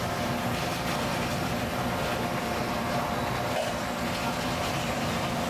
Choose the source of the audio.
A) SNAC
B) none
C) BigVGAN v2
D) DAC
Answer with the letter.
B